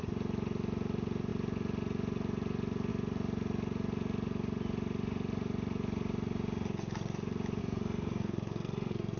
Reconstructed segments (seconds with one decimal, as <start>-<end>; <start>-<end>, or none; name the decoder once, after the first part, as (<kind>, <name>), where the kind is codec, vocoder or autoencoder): 7.6-9.2 (codec, SNAC)